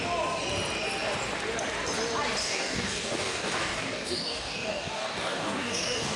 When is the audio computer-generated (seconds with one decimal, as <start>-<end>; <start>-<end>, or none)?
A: 2.4-6.2